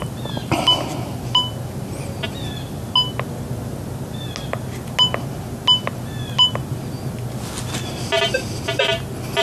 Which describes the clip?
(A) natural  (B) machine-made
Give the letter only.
A